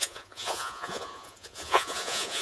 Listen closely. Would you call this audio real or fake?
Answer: fake